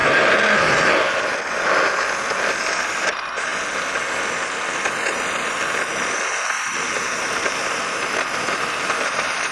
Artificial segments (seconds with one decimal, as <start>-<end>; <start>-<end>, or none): 2.9-3.5; 7.0-9.5